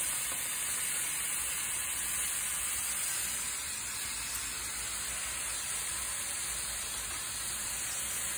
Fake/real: real